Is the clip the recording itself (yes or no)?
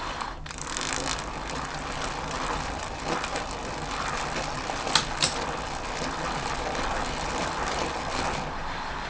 yes